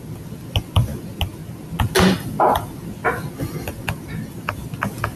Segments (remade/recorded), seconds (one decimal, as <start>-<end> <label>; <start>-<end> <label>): 0.0-5.2 recorded